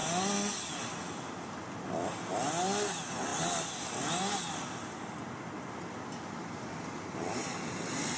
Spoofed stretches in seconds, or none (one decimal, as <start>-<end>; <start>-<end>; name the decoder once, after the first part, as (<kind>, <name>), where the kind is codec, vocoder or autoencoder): none